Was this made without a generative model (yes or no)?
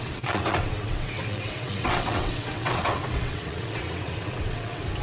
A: no